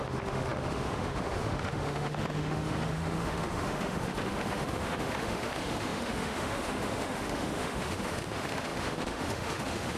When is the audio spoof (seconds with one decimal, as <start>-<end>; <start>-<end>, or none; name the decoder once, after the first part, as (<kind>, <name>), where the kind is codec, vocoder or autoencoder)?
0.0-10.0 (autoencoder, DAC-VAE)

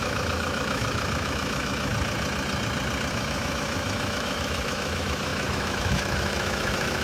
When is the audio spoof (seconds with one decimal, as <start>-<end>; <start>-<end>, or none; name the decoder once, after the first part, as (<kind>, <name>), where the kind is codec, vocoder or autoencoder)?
0.0-1.9 (autoencoder, DAC-VAE); 3.1-7.0

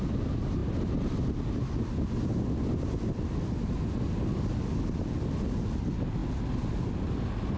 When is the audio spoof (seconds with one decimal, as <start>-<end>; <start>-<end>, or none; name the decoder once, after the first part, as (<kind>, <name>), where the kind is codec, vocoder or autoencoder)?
none

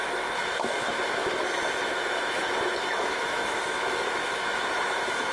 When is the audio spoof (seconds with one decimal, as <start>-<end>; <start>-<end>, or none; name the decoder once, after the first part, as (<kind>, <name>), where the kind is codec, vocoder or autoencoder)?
0.0-5.3 (autoencoder, DAC-VAE)

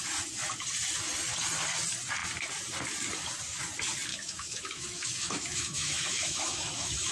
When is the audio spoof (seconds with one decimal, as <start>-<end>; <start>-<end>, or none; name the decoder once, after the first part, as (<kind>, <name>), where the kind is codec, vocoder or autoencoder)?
4.1-7.1 (autoencoder, DAC-VAE)

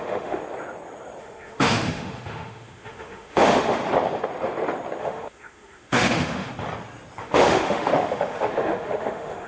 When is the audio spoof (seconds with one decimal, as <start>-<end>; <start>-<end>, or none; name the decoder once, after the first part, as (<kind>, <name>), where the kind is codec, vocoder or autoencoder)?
0.0-0.4 (autoencoder, DAC-VAE); 1.2-3.8; 5.0-6.5; 7.2-9.5

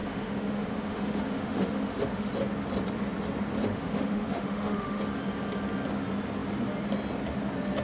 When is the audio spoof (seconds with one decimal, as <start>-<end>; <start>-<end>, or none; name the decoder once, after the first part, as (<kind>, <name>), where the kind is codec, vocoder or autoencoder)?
0.0-2.3 (autoencoder, DAC-VAE); 3.6-5.0

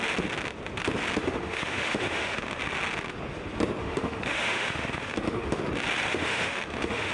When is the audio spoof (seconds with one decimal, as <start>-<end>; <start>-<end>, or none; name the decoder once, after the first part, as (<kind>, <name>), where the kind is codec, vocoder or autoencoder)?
1.2-2.6 (autoencoder, DAC-VAE); 3.8-5.6; 6.1-7.1